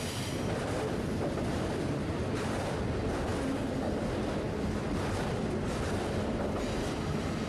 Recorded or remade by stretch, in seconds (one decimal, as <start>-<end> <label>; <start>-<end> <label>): 0.0-7.5 recorded